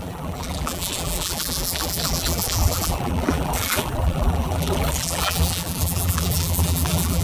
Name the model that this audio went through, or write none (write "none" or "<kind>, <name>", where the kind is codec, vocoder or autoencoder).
vocoder, BigVGAN v2